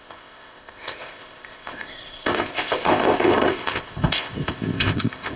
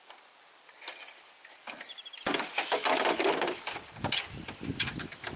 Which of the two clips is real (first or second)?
second